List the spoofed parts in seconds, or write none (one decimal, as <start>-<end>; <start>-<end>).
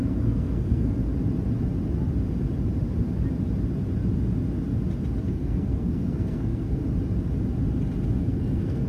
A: 0.0-1.0; 5.2-6.8; 8.2-8.9